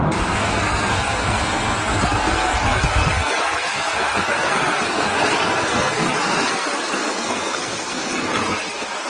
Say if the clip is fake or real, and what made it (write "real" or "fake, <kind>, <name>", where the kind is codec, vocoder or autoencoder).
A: fake, codec, SNAC